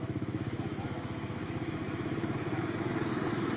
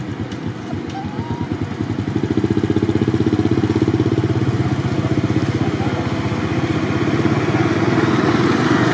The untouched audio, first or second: second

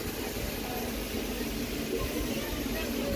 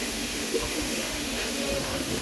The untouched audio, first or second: first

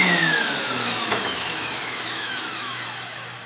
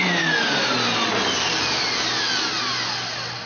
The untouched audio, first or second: second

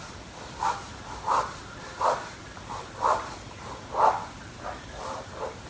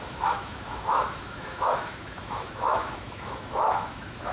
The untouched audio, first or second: first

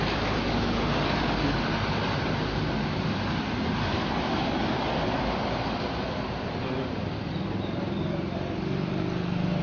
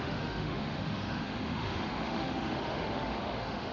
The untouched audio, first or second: first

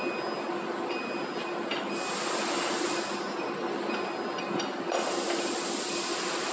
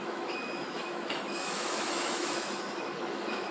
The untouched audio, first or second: first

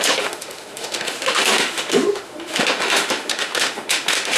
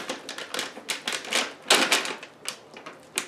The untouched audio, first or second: second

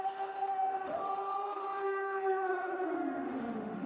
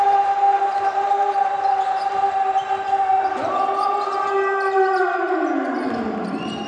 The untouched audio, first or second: second